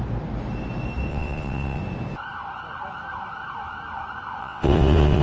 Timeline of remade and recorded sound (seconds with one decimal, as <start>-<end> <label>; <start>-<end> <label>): 0.0-1.1 recorded; 1.1-1.8 remade; 1.8-4.4 recorded; 4.4-5.2 remade

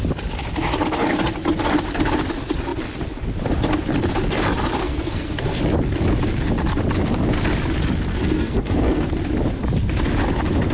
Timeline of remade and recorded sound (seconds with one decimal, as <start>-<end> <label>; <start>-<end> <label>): 0.0-4.8 recorded; 4.8-5.6 remade; 5.6-8.1 recorded; 8.1-9.1 remade; 9.1-10.7 recorded

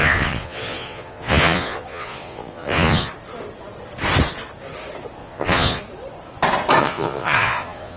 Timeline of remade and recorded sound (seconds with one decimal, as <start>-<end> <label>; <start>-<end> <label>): 0.0-3.1 remade; 3.1-5.2 recorded; 5.2-5.8 remade; 5.8-6.8 recorded; 6.8-8.0 remade

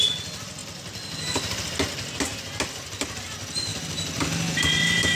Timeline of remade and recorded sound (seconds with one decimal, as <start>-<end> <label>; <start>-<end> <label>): 0.0-3.7 recorded; 3.7-5.1 remade